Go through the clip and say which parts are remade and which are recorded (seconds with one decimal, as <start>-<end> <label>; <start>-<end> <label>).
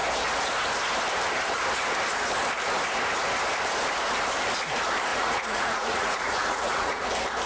0.0-5.1 recorded; 5.1-7.1 remade; 7.1-7.5 recorded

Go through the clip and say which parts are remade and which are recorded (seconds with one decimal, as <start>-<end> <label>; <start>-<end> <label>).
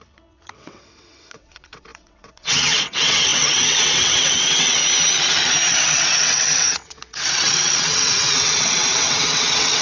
0.0-4.8 remade; 4.8-5.7 recorded; 5.7-9.8 remade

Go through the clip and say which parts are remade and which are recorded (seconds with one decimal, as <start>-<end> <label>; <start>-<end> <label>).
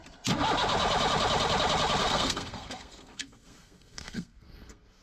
0.0-2.0 recorded; 2.0-5.0 remade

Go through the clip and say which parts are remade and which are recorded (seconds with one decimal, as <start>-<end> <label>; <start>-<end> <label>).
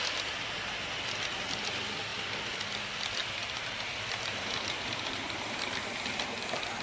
0.0-3.2 recorded; 3.2-5.7 remade; 5.7-6.8 recorded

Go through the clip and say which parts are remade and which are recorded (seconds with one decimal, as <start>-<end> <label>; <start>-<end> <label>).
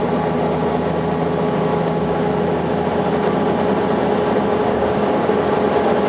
0.0-1.7 recorded; 1.7-2.3 remade; 2.3-4.6 recorded; 4.6-5.3 remade; 5.3-6.1 recorded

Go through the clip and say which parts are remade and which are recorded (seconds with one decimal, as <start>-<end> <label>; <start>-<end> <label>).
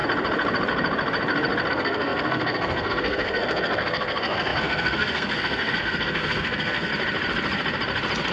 0.0-1.7 recorded; 1.7-6.9 remade; 6.9-8.3 recorded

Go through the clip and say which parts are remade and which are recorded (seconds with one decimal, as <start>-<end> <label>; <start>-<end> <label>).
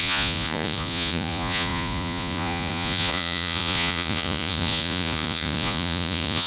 0.0-6.5 remade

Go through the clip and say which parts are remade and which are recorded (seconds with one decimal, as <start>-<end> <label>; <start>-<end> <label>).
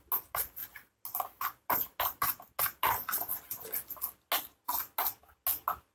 0.0-5.9 recorded